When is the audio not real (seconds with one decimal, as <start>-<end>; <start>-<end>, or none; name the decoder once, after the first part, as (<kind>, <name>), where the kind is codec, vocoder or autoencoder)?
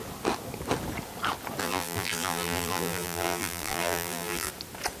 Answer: 1.6-4.5 (vocoder, BigVGAN v2)